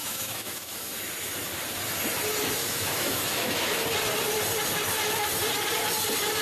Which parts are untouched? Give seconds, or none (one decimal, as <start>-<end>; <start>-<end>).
1.0-2.6; 3.7-6.4